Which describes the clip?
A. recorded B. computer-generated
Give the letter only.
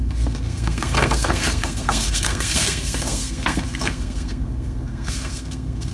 B